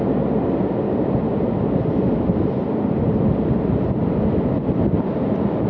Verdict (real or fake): real